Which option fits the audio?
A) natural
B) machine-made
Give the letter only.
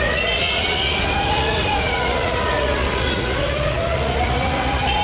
B